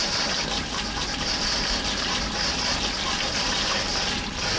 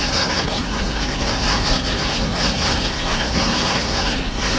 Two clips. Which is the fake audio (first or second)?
second